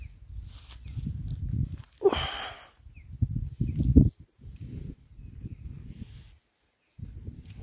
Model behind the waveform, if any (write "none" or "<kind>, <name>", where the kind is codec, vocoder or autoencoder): none